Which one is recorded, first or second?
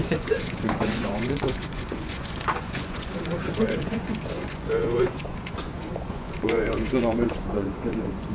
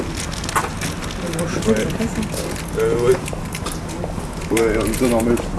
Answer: second